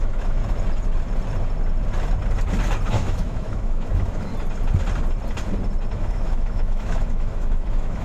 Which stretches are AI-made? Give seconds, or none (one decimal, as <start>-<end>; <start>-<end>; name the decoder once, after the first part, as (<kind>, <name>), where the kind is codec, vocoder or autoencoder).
0.0-0.4 (autoencoder, DAC-VAE); 2.9-4.3; 5.9-8.0

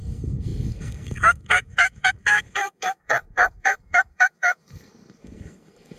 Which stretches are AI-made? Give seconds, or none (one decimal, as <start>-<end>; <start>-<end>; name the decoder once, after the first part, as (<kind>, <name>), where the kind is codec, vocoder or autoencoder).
0.0-6.0 (codec, SNAC)

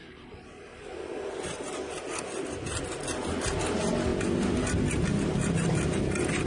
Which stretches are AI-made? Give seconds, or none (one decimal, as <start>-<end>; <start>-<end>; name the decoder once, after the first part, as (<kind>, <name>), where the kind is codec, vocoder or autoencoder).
none

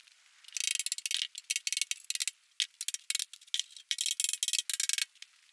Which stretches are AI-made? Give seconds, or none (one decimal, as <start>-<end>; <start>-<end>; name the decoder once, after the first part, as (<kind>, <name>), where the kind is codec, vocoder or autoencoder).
none

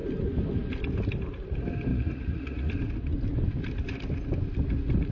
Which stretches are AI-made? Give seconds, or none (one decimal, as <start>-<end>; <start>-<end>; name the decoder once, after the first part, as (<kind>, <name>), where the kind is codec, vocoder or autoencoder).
1.9-2.7 (vocoder, Vocos)

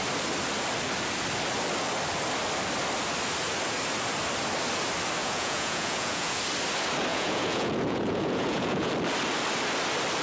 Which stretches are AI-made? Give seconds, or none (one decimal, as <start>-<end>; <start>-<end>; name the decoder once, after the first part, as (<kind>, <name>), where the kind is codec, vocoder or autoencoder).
5.2-6.4 (vocoder, Vocos); 7.1-8.9

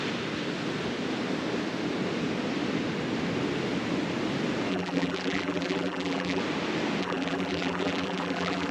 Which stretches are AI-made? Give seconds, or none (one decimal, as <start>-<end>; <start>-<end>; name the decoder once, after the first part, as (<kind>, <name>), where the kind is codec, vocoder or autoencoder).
4.7-6.4 (vocoder, BigVGAN v2); 7.0-8.7

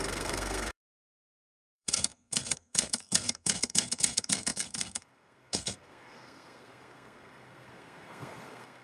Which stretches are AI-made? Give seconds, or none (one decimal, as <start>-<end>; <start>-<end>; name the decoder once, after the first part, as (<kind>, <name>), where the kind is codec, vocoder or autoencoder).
0.0-8.8 (codec, SNAC)